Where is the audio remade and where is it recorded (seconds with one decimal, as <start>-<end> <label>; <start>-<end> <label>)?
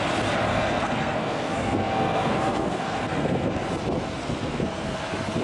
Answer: 0.0-0.5 recorded; 0.5-3.5 remade; 3.5-4.2 recorded; 4.2-5.0 remade; 5.0-5.4 recorded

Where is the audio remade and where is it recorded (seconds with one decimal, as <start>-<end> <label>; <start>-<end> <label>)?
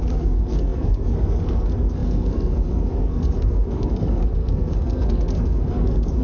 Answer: 0.0-6.2 remade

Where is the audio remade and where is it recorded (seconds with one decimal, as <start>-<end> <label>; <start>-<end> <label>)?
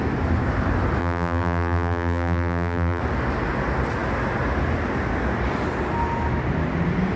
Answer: 0.0-1.0 recorded; 1.0-3.0 remade; 3.0-7.2 recorded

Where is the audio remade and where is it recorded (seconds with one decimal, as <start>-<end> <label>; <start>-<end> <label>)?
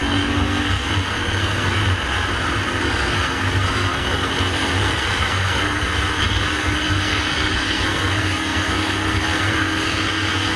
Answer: 0.0-1.8 remade; 1.8-2.8 recorded; 2.8-10.6 remade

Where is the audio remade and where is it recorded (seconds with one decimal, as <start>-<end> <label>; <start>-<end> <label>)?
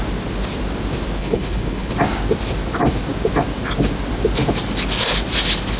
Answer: 0.0-1.2 recorded; 1.2-1.9 remade; 1.9-5.8 recorded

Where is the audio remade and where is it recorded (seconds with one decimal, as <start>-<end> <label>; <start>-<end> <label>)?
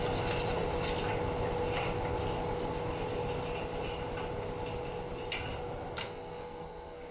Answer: 0.0-6.0 recorded; 6.0-7.1 remade